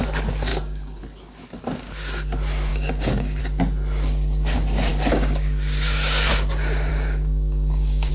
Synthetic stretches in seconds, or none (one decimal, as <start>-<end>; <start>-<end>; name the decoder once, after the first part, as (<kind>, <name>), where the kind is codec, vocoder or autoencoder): 0.5-1.0 (codec, DAC); 2.7-3.4; 4.9-6.3; 6.9-8.1